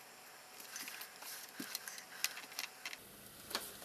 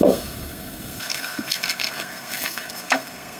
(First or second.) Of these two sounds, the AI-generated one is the second